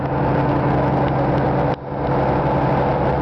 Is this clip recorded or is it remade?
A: recorded